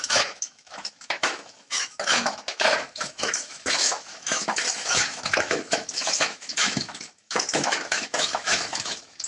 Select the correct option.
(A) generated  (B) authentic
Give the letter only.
A